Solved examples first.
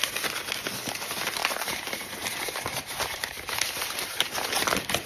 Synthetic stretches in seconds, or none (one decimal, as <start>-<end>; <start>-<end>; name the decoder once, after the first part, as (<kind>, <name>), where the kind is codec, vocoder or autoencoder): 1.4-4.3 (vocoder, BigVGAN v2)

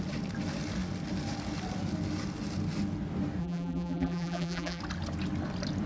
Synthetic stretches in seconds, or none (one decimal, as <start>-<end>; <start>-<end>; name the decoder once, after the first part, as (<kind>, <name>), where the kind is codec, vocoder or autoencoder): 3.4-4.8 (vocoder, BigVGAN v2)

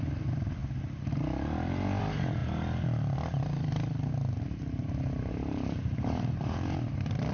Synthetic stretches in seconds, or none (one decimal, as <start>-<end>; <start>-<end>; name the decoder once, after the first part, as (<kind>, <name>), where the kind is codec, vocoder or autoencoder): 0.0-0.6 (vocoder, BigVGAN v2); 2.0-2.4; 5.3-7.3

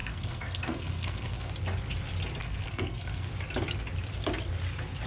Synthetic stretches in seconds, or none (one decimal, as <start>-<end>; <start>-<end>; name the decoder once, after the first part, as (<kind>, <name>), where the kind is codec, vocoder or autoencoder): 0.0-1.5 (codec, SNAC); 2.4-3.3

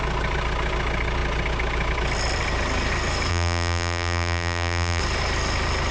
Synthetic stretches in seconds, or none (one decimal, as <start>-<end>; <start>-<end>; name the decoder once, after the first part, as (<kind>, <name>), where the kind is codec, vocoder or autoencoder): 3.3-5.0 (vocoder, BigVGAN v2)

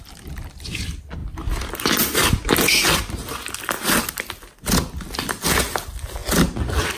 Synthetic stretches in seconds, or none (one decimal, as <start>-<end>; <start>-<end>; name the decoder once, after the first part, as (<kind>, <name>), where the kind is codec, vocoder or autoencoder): none